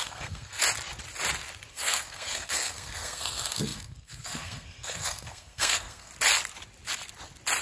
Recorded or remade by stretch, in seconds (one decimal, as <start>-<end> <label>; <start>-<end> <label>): 0.0-0.6 remade; 0.6-1.7 recorded; 1.7-6.1 remade; 6.1-7.6 recorded